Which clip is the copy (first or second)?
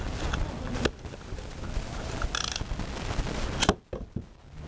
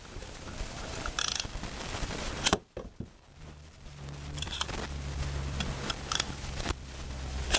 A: second